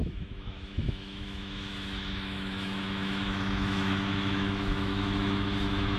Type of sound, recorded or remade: remade